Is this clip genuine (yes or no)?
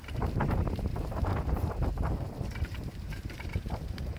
no